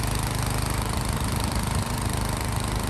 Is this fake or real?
fake